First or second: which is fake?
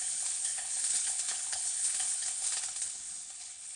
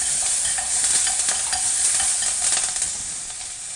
first